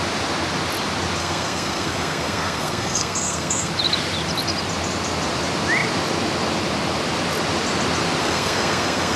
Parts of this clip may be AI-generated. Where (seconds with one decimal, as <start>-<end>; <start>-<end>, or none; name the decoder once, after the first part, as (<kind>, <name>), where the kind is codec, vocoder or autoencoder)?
1.2-3.7 (codec, SNAC); 8.2-9.2